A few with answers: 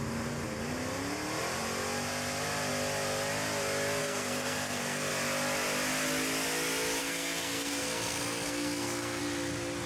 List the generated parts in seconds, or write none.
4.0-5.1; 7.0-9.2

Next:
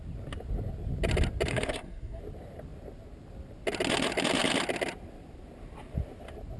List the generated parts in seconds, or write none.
1.5-2.2

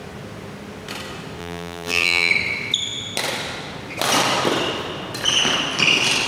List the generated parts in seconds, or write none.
1.4-2.3

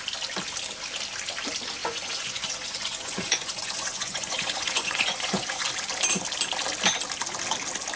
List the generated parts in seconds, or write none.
1.8-5.7

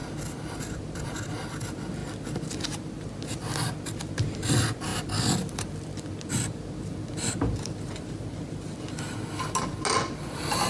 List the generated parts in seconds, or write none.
none

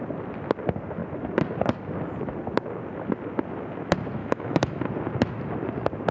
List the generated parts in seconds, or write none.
4.2-4.8

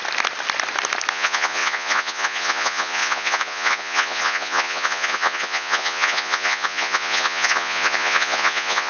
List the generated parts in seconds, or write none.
1.1-8.9